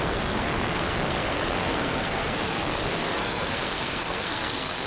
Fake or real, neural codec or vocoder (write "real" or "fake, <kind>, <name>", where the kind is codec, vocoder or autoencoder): fake, codec, SNAC